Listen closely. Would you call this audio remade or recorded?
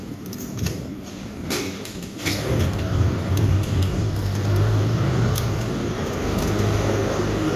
remade